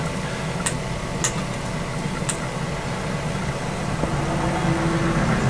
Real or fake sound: real